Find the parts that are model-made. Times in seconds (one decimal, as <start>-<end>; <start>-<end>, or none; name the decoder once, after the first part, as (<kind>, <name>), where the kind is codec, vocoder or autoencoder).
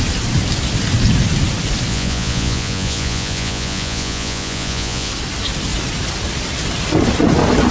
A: 1.9-5.1 (vocoder, Vocos)